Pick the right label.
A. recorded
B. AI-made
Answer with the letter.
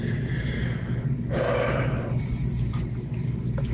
A